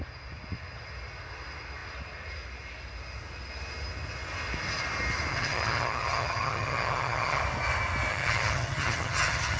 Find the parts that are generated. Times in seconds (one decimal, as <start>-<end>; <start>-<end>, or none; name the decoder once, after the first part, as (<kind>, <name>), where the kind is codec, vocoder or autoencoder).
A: 5.3-7.4 (vocoder, HiFi-GAN); 8.1-9.6